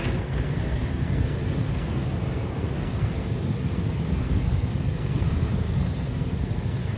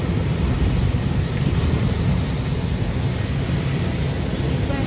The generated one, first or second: first